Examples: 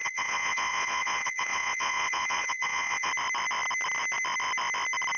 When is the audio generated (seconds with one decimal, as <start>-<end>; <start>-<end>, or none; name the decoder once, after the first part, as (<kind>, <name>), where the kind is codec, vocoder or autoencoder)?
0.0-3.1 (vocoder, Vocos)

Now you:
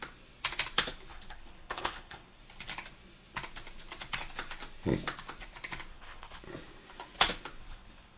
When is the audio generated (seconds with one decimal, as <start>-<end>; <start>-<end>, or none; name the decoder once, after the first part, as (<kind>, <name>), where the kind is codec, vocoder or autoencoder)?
1.1-2.4 (codec, HILCodec); 5.9-6.4; 7.6-8.2

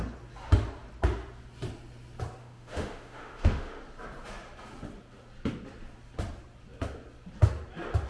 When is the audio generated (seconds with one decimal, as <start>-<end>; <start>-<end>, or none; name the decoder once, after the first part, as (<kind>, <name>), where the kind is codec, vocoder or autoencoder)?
2.4-3.8 (autoencoder, DAC-VAE)

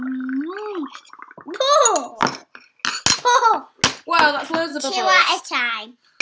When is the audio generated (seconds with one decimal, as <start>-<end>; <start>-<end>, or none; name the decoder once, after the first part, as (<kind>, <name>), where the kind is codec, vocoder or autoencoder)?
4.7-5.4 (codec, DAC)